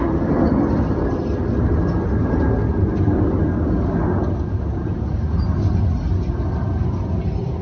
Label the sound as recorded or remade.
recorded